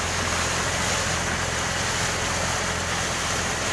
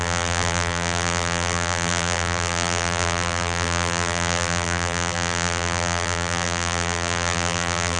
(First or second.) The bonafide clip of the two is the first